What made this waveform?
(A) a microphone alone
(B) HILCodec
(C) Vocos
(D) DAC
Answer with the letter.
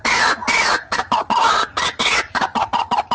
C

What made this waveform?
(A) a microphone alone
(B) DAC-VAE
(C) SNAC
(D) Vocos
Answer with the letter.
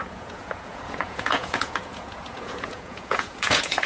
D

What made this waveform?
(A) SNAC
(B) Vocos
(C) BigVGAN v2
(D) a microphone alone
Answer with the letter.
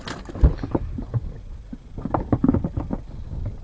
D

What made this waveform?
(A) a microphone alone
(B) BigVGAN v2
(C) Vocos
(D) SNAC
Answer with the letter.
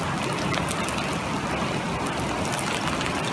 A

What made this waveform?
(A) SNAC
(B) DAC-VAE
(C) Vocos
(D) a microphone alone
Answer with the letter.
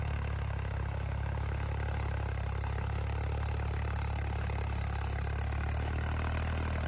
D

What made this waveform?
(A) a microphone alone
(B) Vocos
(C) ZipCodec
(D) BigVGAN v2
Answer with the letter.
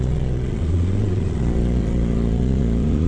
B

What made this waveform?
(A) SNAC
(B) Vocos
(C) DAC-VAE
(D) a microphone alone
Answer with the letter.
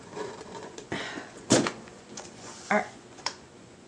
B